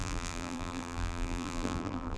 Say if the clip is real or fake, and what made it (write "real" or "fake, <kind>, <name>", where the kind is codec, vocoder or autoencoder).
fake, vocoder, BigVGAN v2